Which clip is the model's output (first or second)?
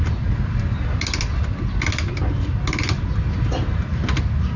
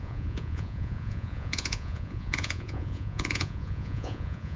second